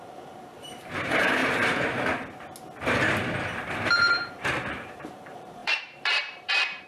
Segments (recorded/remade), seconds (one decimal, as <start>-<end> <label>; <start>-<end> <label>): 0.0-1.4 remade; 1.4-3.7 recorded; 3.7-6.9 remade